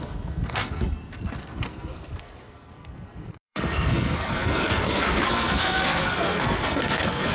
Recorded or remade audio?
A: remade